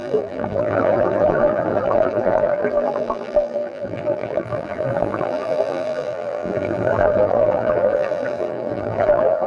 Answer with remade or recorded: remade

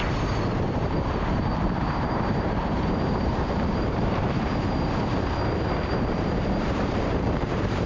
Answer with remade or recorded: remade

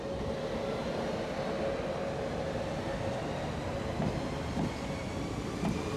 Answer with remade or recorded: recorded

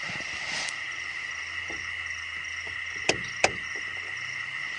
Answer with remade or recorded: remade